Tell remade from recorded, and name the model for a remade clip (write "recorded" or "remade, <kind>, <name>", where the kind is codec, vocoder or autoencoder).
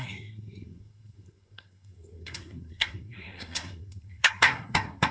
remade, codec, SNAC